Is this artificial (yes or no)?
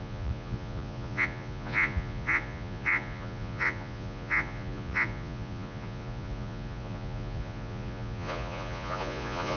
yes